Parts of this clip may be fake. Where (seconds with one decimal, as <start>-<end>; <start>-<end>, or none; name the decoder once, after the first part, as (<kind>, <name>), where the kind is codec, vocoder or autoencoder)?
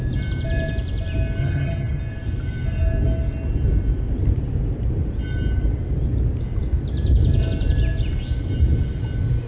1.4-2.0 (vocoder, HiFi-GAN)